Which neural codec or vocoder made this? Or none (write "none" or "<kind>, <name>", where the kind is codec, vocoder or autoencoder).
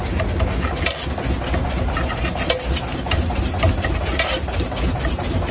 none